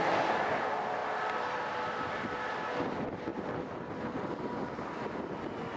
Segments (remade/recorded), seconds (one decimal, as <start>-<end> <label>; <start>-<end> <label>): 0.0-5.8 recorded